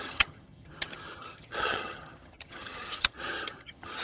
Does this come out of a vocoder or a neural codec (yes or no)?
yes